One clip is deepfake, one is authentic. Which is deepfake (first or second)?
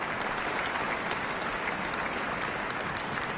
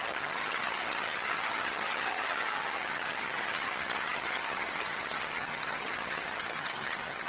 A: second